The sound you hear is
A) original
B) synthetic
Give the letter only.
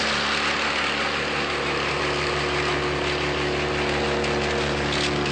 A